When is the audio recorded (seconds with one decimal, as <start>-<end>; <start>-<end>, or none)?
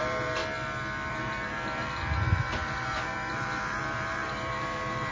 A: 0.4-1.1